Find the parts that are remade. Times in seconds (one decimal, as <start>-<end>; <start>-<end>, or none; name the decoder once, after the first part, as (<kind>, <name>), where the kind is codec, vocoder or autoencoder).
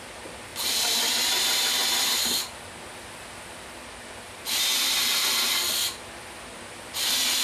none